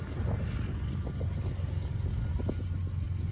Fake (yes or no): no